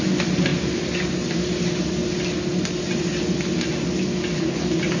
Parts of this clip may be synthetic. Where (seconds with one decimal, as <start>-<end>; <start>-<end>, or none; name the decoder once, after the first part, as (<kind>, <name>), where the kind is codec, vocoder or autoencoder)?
none